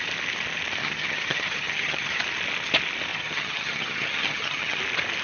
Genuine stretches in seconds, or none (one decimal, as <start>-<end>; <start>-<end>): 0.0-0.8; 2.2-3.1; 4.8-5.2